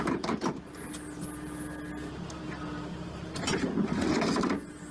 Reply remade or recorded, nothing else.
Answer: recorded